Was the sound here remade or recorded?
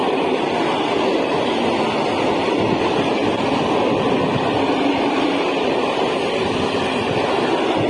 recorded